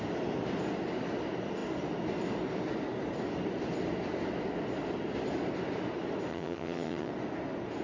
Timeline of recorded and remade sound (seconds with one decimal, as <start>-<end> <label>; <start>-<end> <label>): 0.0-6.3 recorded; 6.3-7.1 remade; 7.1-7.8 recorded